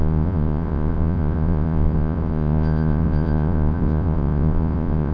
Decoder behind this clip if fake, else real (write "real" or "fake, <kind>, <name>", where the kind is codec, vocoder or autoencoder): fake, vocoder, Vocos